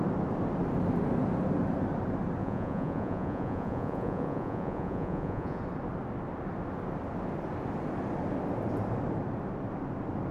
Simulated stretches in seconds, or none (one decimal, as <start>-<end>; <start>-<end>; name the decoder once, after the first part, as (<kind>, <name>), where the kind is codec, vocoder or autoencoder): 2.4-5.6 (vocoder, Vocos)